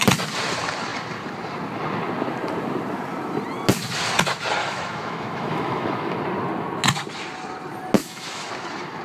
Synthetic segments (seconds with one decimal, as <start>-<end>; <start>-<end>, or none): 4.6-6.2; 8.0-8.5